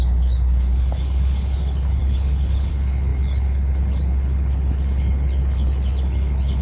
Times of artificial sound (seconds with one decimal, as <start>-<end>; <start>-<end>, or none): 0.0-6.6